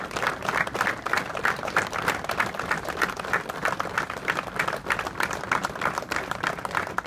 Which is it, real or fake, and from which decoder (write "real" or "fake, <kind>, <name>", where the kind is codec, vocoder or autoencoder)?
real